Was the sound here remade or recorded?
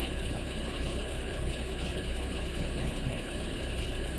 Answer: remade